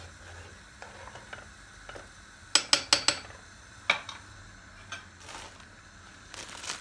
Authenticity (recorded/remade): recorded